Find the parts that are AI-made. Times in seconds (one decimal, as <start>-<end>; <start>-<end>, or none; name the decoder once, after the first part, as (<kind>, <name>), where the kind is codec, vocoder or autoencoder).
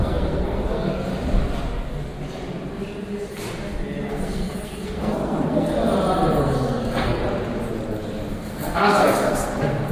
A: 0.0-1.1 (codec, SNAC); 4.1-5.7; 6.4-7.2; 8.3-9.9